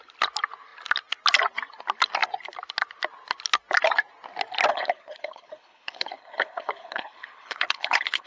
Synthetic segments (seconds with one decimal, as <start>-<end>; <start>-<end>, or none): 4.7-8.3